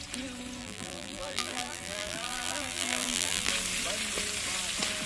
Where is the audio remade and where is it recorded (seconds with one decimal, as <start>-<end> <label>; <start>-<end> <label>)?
0.0-0.6 recorded; 0.6-3.5 remade; 3.5-5.1 recorded